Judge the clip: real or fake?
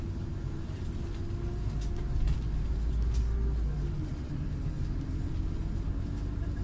real